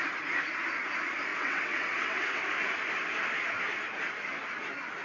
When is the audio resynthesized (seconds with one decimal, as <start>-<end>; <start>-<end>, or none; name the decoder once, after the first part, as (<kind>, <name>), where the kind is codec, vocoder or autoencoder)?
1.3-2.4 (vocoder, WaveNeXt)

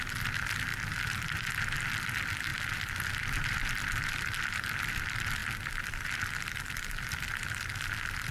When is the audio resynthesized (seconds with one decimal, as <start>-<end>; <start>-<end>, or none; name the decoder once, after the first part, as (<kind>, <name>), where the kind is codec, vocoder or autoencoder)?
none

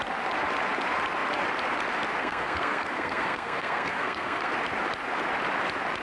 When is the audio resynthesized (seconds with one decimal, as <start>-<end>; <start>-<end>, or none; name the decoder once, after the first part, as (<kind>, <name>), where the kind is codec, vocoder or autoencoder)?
2.2-4.5 (codec, SNAC)